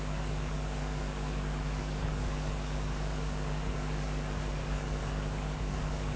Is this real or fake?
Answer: fake